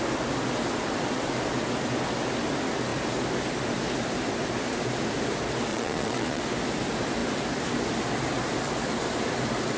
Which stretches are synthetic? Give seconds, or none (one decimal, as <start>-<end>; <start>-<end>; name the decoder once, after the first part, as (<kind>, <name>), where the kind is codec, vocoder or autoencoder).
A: 5.7-6.4 (vocoder, Vocos)